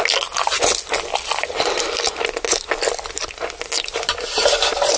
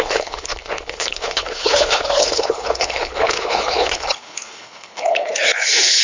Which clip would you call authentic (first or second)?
first